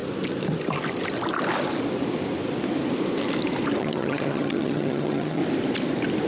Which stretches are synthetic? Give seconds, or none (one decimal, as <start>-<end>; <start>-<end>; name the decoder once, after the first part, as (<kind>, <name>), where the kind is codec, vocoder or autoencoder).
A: 3.8-5.4 (vocoder, HiFi-GAN)